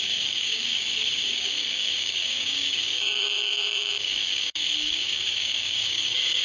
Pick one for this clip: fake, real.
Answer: fake